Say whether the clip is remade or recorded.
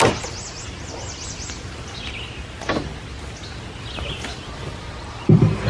recorded